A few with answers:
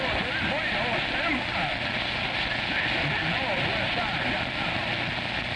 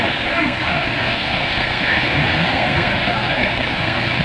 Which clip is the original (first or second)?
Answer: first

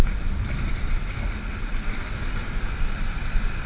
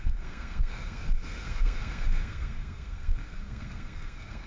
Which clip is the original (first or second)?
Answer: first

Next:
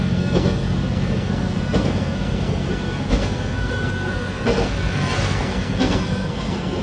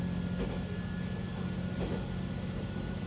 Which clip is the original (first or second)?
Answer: second